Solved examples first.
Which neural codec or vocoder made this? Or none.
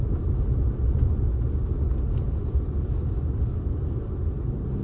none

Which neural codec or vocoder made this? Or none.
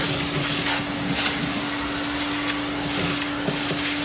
none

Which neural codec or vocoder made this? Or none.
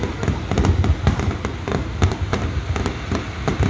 none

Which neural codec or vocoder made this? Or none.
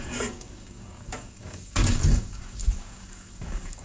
codec, DAC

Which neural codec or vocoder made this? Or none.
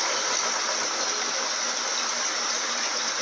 none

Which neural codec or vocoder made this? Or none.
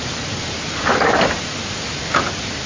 none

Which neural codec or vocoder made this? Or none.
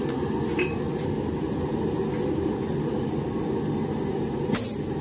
none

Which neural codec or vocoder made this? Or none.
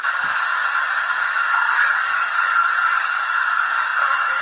codec, DAC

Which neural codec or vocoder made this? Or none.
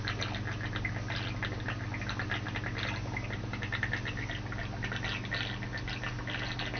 none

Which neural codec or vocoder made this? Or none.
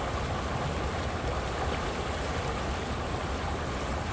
none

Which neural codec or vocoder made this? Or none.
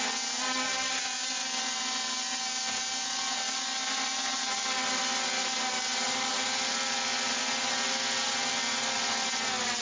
none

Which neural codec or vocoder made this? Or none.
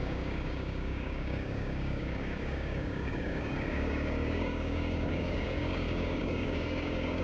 codec, DAC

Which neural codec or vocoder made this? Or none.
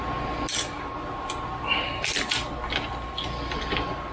none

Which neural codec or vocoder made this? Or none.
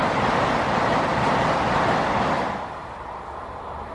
none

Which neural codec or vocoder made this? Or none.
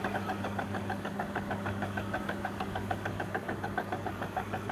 codec, DAC